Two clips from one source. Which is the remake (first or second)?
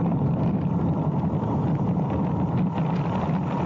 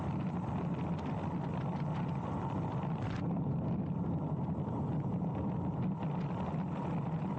first